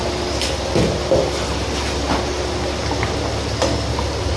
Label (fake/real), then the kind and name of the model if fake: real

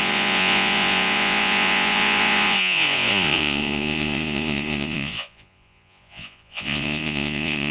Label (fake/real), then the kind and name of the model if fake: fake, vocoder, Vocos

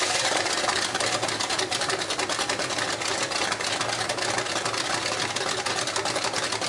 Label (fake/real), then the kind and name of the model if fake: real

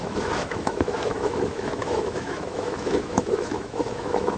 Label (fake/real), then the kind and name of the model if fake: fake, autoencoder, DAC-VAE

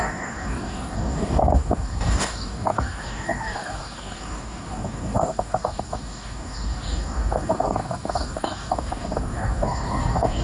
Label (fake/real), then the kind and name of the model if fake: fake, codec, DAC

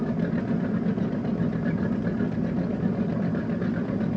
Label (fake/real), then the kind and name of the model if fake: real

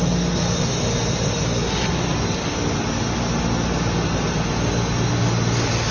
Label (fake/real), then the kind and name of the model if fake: real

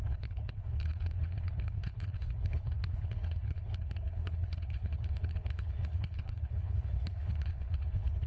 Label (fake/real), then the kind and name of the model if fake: fake, codec, HILCodec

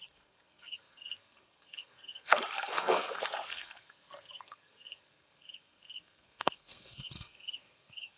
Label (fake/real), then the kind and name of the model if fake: fake, codec, SNAC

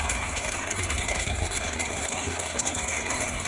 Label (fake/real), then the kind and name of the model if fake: fake, codec, SNAC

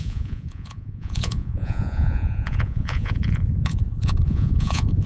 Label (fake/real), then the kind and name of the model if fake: fake, vocoder, Vocos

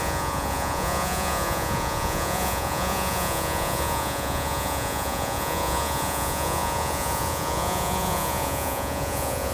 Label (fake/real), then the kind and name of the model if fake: fake, vocoder, Vocos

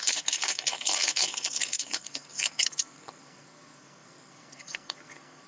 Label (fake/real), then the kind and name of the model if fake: fake, codec, SNAC